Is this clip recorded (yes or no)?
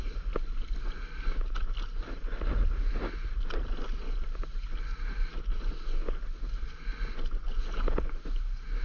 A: yes